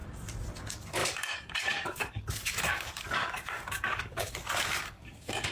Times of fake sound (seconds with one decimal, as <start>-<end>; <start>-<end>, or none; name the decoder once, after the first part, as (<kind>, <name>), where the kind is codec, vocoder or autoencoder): 0.6-5.5 (codec, DAC)